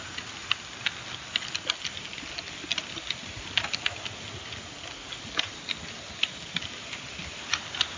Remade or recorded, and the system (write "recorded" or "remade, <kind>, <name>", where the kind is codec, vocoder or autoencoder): recorded